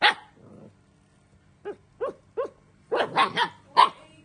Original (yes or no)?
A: yes